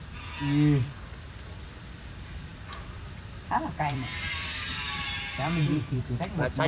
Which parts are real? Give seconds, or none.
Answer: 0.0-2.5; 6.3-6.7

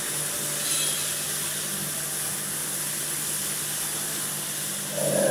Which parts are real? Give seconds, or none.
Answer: 0.0-5.3

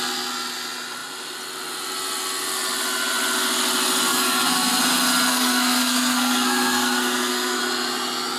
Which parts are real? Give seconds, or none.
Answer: 0.0-4.1; 4.8-5.3; 7.6-8.4

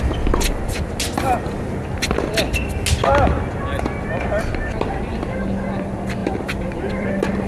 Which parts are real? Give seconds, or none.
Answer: 0.0-6.2; 7.1-7.5

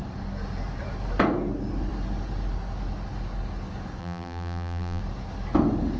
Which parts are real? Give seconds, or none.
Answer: 0.0-4.0; 5.0-6.0